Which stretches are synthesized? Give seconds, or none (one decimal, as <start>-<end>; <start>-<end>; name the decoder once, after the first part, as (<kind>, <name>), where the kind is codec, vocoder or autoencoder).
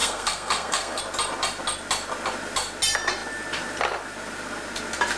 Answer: 0.0-1.0 (codec, SNAC)